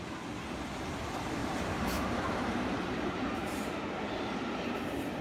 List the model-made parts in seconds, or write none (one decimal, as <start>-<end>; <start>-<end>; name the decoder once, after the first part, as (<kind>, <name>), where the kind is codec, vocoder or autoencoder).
1.4-4.2 (vocoder, BigVGAN v2)